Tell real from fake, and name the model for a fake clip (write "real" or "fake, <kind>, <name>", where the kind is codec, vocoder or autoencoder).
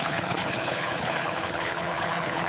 fake, codec, HILCodec